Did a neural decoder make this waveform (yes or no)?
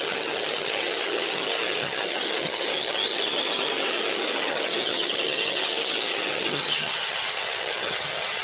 yes